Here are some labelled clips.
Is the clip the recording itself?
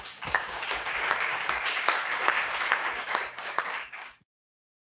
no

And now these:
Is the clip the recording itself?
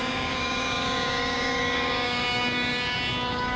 no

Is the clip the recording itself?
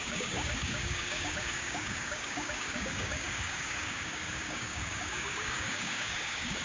no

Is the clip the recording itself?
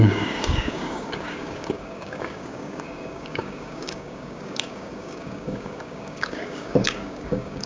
no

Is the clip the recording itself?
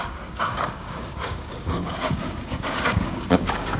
no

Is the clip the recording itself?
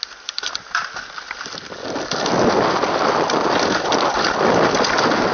yes